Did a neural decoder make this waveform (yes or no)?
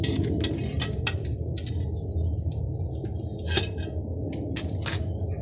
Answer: no